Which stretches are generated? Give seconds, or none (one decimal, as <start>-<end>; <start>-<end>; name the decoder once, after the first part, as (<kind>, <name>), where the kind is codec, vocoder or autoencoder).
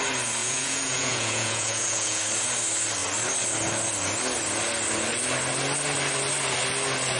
0.4-2.2 (vocoder, Vocos)